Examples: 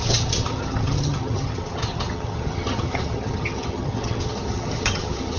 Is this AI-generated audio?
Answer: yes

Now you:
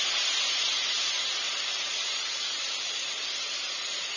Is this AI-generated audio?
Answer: no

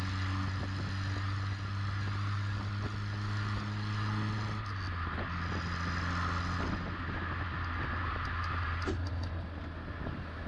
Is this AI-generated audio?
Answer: no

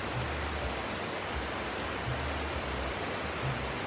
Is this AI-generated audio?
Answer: no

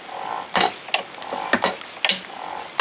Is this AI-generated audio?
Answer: no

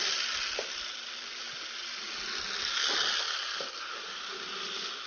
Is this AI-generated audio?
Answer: no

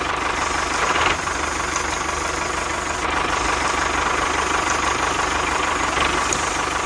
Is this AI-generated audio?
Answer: yes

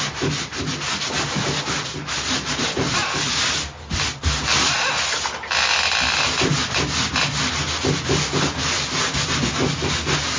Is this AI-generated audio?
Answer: no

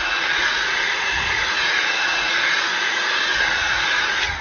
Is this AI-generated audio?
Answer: yes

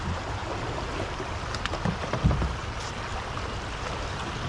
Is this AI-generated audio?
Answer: no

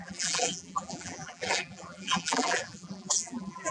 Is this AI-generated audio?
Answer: yes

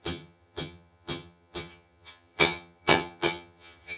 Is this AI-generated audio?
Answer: yes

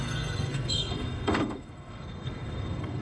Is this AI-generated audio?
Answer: yes